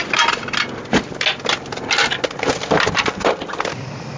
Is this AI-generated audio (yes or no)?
no